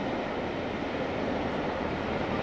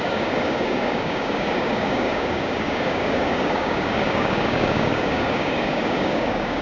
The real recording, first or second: first